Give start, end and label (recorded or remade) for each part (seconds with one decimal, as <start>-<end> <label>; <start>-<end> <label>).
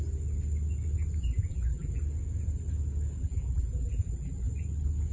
0.0-1.2 recorded; 1.2-2.0 remade; 2.0-3.2 recorded; 3.2-4.5 remade; 4.5-5.1 recorded